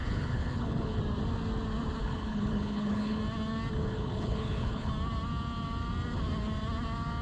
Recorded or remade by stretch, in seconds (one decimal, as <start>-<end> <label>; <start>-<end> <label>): 0.0-1.0 remade; 1.0-2.0 recorded; 2.0-3.2 remade; 3.2-3.8 recorded; 3.8-4.9 remade; 4.9-7.2 recorded